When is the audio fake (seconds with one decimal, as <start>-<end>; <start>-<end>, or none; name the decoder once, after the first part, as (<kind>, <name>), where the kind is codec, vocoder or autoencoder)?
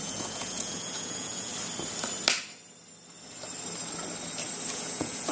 0.0-1.5 (vocoder, Vocos); 4.7-5.3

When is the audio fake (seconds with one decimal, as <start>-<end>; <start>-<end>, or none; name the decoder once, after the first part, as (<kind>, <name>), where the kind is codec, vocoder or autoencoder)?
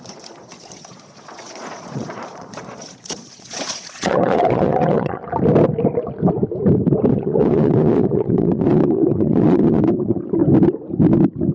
0.0-5.2 (vocoder, Vocos); 7.1-10.4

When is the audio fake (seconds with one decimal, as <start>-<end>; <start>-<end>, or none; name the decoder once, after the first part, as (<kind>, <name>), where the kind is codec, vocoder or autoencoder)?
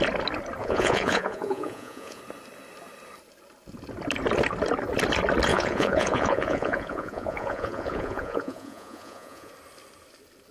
0.6-2.2 (vocoder, Vocos); 5.5-9.5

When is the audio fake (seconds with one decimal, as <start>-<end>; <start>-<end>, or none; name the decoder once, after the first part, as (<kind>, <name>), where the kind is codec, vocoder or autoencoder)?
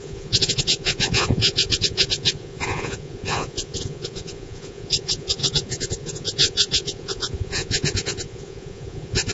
0.0-9.3 (vocoder, Vocos)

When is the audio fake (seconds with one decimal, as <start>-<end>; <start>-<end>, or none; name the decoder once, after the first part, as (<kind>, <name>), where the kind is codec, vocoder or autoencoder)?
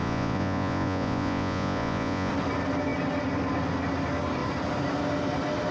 0.0-2.3 (vocoder, Vocos)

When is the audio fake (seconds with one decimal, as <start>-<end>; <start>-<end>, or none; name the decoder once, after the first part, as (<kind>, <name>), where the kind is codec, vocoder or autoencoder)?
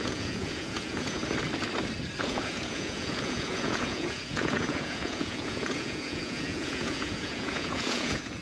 0.0-1.2 (vocoder, Vocos); 2.2-8.4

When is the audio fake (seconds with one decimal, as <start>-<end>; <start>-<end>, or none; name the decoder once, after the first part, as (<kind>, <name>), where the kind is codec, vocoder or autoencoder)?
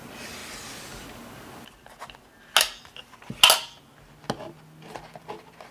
none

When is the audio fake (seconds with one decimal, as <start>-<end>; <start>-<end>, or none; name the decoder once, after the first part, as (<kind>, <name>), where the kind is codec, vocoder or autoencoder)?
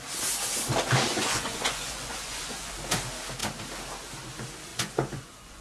1.1-2.7 (vocoder, Vocos); 4.7-5.6